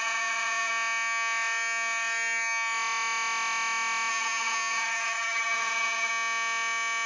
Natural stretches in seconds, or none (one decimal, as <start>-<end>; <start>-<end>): 0.7-4.1; 6.1-7.1